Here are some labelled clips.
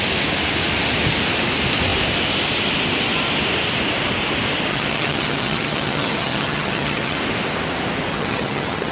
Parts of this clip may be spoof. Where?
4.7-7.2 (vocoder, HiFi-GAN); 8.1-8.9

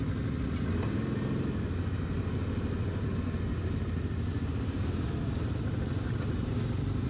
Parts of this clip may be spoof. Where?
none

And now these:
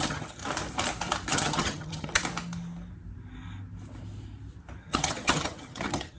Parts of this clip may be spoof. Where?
0.0-0.4 (vocoder, HiFi-GAN); 1.3-2.2; 4.8-6.2

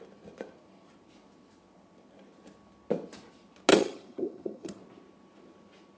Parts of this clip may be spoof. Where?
3.7-4.8 (vocoder, HiFi-GAN)

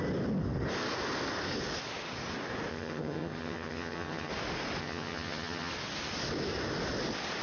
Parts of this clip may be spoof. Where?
2.7-4.3 (vocoder, HiFi-GAN); 4.8-5.7

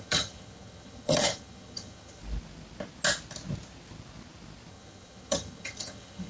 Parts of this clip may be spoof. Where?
0.0-2.2 (vocoder, HiFi-GAN); 4.7-6.3

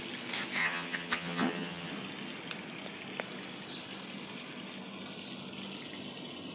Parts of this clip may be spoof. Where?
0.6-1.9 (vocoder, HiFi-GAN)